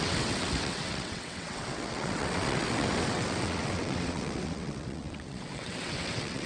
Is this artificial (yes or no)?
yes